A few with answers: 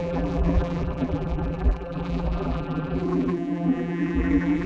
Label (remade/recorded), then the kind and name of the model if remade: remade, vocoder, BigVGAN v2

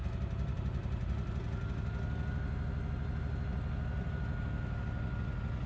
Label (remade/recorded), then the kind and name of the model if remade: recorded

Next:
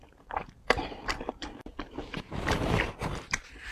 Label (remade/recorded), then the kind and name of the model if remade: remade, vocoder, BigVGAN v2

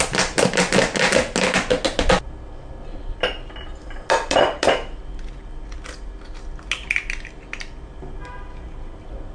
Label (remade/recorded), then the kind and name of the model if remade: recorded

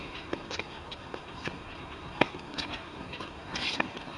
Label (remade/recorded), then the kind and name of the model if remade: remade, codec, SNAC